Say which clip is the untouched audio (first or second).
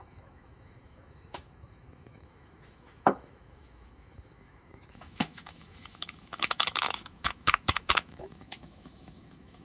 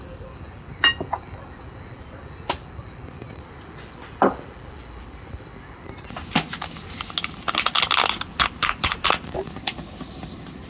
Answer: second